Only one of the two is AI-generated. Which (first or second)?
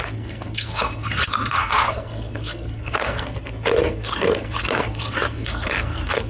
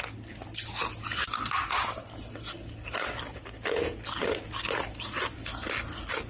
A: first